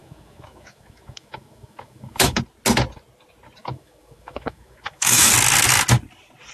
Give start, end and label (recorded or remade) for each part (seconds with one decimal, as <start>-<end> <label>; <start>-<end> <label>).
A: 0.0-2.4 remade; 2.4-3.6 recorded; 3.6-5.3 remade; 5.3-6.5 recorded